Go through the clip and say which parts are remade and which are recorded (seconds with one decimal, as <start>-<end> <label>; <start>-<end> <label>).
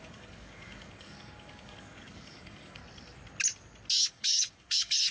0.0-2.8 remade; 2.8-4.1 recorded; 4.1-5.1 remade